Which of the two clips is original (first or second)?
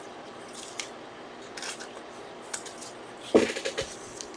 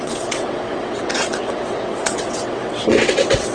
first